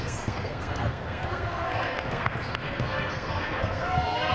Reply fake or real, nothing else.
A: fake